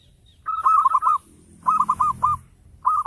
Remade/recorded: recorded